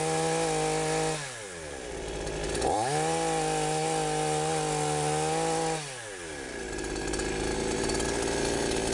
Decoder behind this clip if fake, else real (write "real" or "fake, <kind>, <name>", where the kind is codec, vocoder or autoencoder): real